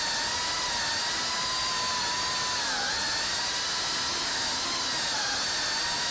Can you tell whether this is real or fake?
real